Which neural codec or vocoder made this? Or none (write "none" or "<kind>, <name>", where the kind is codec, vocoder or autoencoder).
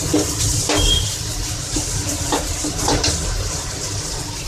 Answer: none